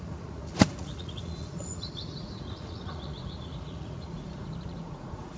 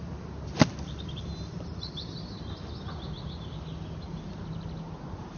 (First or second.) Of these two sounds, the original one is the second